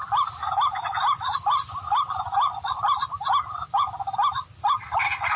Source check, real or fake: real